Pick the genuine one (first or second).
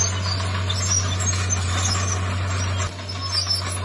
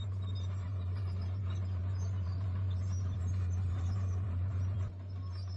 first